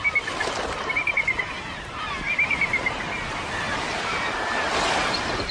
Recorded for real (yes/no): yes